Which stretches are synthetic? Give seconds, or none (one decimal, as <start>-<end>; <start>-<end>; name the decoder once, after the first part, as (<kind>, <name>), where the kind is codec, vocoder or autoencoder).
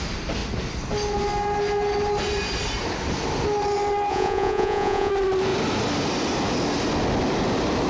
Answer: 4.1-5.1 (vocoder, Vocos)